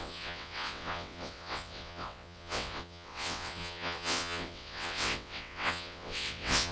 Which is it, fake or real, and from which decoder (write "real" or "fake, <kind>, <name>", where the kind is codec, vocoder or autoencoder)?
fake, vocoder, WaveNeXt